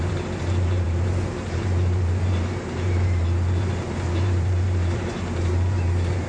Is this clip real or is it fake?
fake